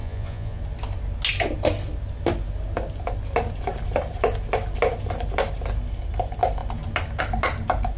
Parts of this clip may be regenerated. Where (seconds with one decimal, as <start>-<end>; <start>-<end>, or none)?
0.0-0.6